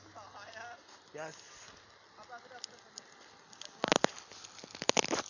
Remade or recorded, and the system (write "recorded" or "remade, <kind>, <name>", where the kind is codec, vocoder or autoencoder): recorded